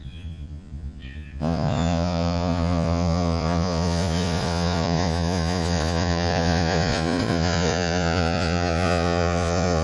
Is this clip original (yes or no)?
no